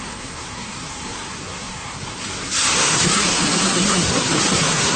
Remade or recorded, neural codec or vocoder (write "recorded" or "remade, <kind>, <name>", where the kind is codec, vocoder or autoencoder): remade, codec, SNAC